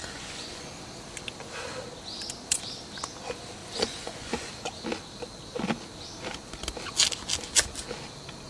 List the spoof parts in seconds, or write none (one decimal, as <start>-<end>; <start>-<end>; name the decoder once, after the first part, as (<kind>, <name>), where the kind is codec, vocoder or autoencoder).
0.0-0.7 (vocoder, Vocos); 3.6-4.5